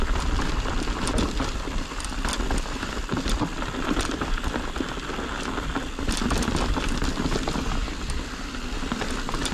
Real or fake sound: real